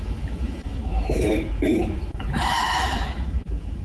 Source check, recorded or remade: remade